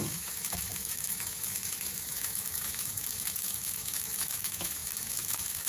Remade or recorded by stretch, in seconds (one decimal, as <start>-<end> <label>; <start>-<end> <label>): 0.0-5.7 remade